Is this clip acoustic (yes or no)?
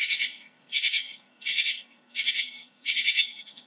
no